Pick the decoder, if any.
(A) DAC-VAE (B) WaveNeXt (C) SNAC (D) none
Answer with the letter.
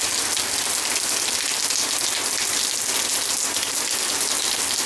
D